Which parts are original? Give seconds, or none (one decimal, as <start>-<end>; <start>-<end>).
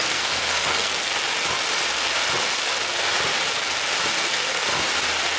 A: 1.1-4.3; 4.7-5.4